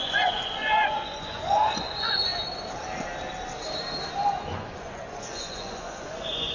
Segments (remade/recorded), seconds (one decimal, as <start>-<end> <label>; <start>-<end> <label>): 0.0-2.3 remade; 2.3-4.4 recorded; 4.4-6.5 remade